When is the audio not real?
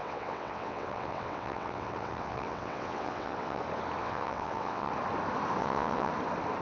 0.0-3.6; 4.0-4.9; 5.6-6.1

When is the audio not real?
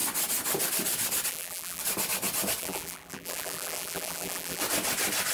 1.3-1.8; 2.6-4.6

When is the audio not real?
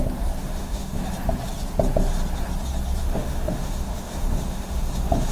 0.4-1.0; 3.0-5.3